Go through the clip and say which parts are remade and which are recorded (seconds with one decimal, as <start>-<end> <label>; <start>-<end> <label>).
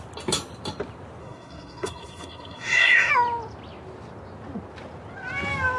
0.0-1.2 recorded; 1.2-3.1 remade; 3.1-5.8 recorded